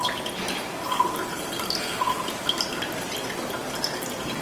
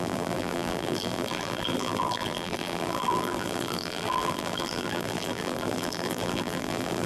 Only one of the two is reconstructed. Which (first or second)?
second